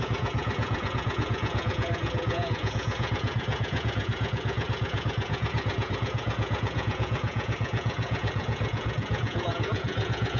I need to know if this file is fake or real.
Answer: fake